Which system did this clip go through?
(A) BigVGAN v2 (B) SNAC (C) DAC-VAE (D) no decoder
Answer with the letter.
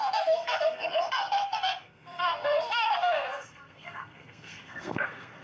B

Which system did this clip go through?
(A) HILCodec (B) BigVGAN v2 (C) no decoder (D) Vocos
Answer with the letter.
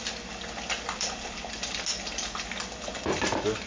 C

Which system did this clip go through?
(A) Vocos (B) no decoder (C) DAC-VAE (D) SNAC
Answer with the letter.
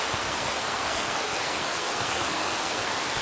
D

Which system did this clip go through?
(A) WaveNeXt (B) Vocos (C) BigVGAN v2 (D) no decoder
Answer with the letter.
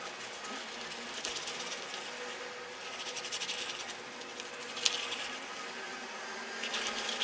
D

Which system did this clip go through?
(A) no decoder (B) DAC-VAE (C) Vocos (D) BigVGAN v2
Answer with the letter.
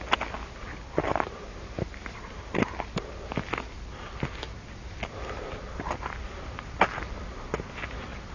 A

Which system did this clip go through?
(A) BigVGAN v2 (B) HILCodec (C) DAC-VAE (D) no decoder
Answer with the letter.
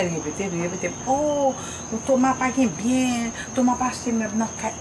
D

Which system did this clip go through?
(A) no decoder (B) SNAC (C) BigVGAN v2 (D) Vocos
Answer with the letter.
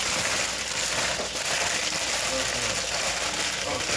A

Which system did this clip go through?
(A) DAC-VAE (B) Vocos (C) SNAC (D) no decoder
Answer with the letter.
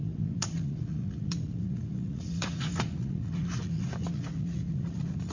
B